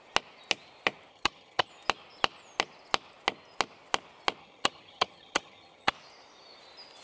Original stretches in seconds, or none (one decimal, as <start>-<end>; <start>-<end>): 0.0-1.1; 1.7-4.4; 5.9-7.0